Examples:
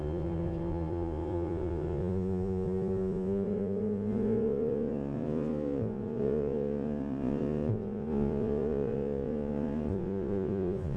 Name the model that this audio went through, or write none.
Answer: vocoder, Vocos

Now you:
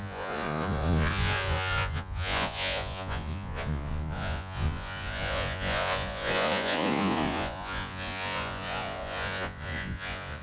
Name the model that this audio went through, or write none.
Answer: vocoder, Vocos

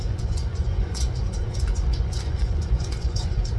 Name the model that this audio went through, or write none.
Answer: vocoder, Vocos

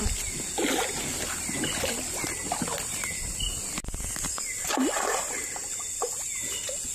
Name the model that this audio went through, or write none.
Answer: none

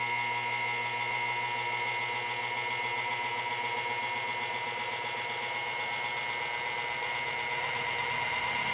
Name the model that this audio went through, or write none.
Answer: none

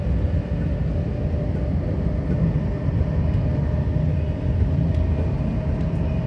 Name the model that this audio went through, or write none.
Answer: none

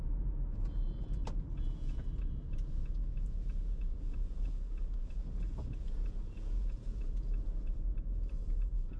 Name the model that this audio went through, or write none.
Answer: vocoder, Vocos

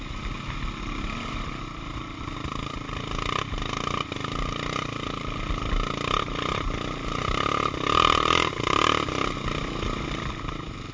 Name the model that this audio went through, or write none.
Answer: none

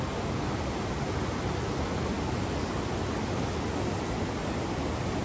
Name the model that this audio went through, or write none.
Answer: none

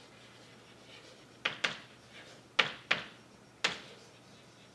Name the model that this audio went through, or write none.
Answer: none